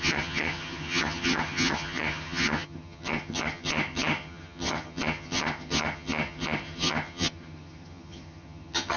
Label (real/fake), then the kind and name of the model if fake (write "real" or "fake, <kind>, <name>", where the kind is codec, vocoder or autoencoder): fake, vocoder, HiFi-GAN